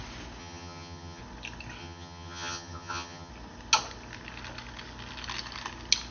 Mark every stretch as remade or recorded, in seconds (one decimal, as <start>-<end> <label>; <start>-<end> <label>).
0.0-0.4 recorded; 0.4-1.2 remade; 1.2-1.8 recorded; 1.8-3.3 remade; 3.3-6.1 recorded